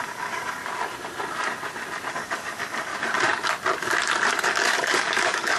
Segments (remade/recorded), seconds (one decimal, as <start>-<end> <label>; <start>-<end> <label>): 0.0-0.6 remade; 0.6-2.1 recorded; 2.1-2.9 remade; 2.9-4.3 recorded; 4.3-5.6 remade